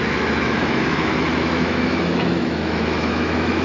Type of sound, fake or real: fake